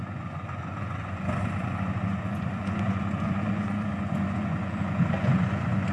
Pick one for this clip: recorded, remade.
remade